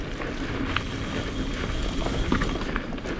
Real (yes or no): yes